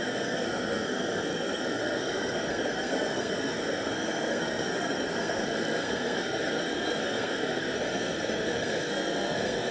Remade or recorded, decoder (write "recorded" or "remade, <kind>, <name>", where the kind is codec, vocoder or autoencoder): remade, codec, SNAC